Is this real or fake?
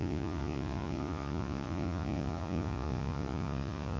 fake